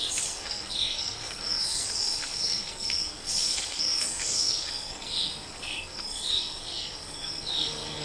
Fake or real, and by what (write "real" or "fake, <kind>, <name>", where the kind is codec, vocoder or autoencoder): fake, codec, SNAC